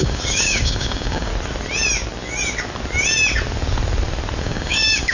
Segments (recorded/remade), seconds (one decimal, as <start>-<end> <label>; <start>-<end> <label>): 0.0-1.3 remade; 1.3-4.4 recorded; 4.4-5.1 remade